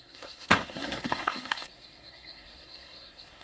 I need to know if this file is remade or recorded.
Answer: remade